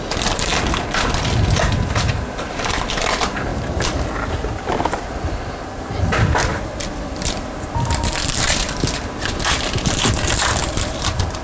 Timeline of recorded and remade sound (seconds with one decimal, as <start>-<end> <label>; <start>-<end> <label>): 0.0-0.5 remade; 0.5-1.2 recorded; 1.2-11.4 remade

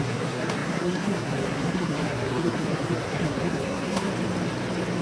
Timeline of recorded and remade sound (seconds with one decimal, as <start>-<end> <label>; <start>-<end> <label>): 0.0-4.1 remade; 4.1-5.0 recorded

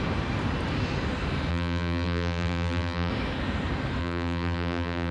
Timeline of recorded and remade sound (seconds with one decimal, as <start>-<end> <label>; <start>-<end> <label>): 0.0-1.5 recorded; 1.5-3.1 remade; 3.1-4.0 recorded; 4.0-5.1 remade

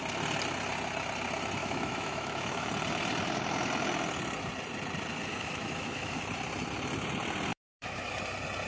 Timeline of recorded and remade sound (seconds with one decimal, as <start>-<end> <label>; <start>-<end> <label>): 0.0-1.6 recorded; 1.6-2.7 remade; 2.7-5.3 recorded; 5.3-6.2 remade; 6.2-7.5 recorded; 7.5-8.2 remade; 8.2-8.7 recorded